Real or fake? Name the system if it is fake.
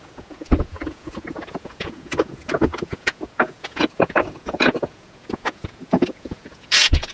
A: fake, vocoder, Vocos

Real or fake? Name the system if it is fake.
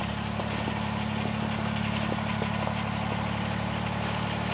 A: real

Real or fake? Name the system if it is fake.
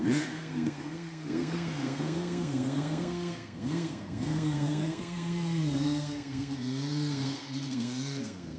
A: fake, codec, SNAC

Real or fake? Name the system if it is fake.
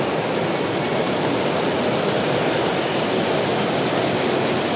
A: real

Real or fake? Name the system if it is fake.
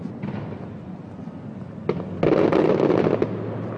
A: real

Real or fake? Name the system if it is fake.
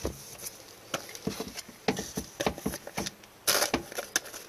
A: real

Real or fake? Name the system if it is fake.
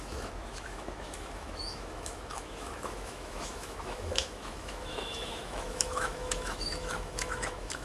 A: fake, autoencoder, DAC-VAE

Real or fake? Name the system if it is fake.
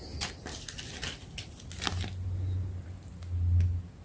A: real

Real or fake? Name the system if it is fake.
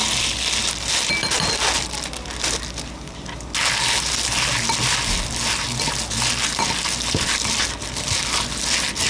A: real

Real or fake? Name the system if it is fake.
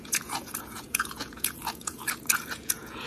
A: fake, vocoder, Vocos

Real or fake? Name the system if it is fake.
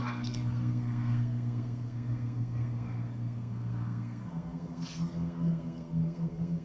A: fake, codec, SNAC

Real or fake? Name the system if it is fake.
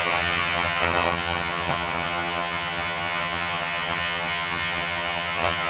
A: fake, vocoder, HiFi-GAN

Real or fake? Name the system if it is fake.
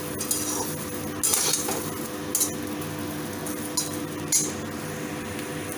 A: real